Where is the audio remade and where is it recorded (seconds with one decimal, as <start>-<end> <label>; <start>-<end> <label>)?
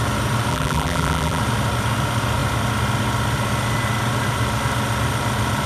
0.0-0.5 recorded; 0.5-1.4 remade; 1.4-5.7 recorded